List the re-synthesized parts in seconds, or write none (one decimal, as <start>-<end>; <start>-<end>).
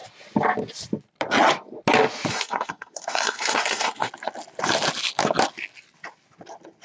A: 2.3-4.1